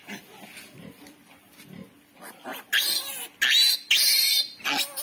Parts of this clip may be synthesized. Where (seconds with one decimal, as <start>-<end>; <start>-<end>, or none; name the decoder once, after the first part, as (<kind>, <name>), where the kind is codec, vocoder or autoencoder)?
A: none